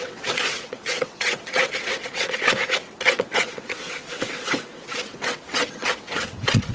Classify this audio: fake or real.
fake